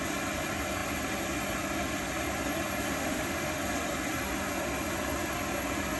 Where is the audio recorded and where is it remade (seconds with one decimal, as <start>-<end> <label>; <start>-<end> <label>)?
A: 0.0-2.9 recorded; 2.9-3.6 remade; 3.6-6.0 recorded